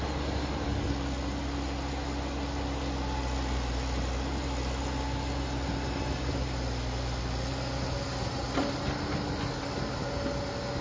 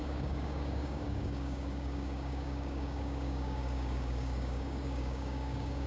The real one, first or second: first